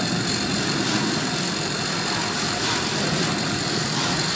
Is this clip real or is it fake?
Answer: fake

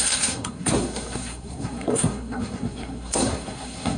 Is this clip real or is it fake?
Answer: fake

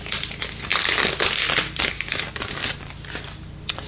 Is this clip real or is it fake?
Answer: real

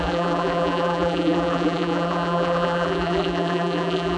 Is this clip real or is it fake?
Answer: fake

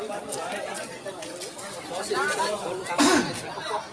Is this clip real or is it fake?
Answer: real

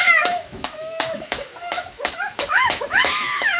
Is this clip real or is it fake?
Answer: fake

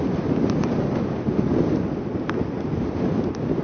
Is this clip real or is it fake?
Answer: real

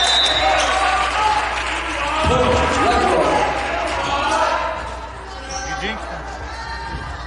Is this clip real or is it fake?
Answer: real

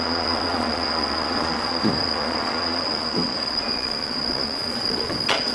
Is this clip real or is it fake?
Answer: fake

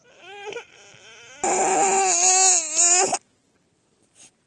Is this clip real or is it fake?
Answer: real